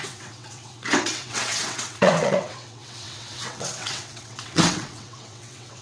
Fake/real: fake